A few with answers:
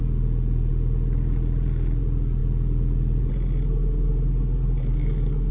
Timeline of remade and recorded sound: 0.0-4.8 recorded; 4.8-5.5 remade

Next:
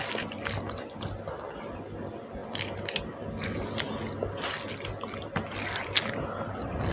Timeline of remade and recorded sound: 0.0-6.9 recorded

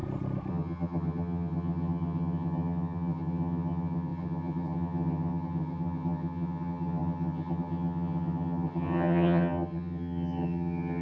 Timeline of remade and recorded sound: 0.0-0.5 recorded; 0.5-11.0 remade

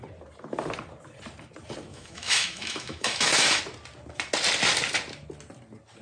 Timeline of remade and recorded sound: 0.0-1.9 recorded; 1.9-3.6 remade; 3.6-6.0 recorded

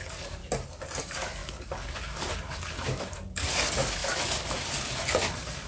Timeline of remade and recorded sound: 0.0-0.4 remade; 0.4-1.0 recorded; 1.0-5.7 remade

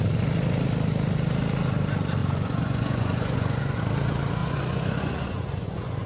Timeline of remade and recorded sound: 0.0-2.2 recorded; 2.2-3.8 remade; 3.8-4.4 recorded; 4.4-6.1 remade